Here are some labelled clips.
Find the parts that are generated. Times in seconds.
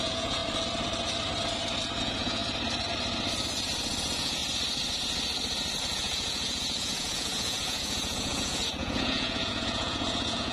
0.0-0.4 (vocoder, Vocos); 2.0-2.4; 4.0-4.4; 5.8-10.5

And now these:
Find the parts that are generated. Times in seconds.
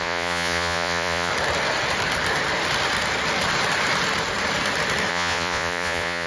0.0-1.3 (vocoder, Vocos); 5.1-6.3